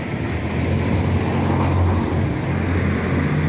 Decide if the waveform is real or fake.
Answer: real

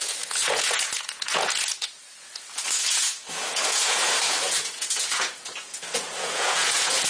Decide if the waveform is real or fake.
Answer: fake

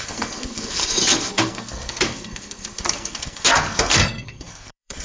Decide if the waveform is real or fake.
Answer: fake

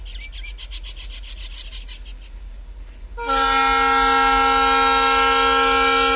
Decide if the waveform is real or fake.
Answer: real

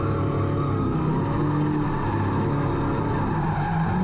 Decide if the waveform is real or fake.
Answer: real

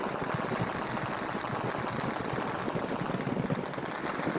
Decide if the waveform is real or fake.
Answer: real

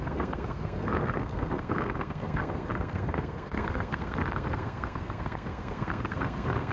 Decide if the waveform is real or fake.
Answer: fake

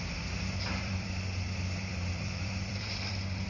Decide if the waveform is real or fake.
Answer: fake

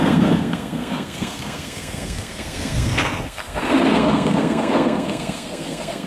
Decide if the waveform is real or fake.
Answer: fake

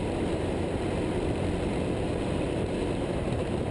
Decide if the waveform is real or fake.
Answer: fake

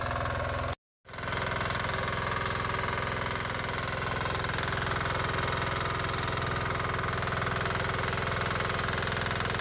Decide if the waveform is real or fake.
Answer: real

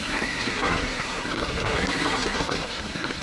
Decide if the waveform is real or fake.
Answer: fake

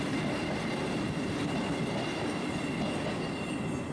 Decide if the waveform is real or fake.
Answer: real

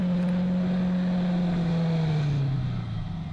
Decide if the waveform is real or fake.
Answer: real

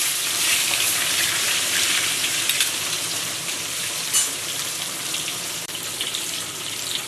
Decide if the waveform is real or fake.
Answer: fake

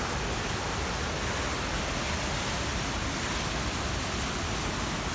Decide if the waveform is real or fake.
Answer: real